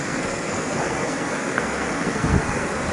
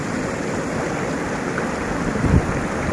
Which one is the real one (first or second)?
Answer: second